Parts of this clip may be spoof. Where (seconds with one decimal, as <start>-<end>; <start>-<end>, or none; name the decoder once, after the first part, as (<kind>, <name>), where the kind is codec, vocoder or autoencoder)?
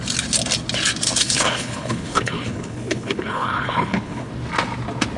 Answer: 1.2-4.3 (codec, HILCodec)